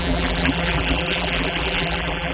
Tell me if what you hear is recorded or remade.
remade